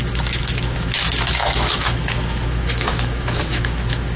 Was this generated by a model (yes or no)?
yes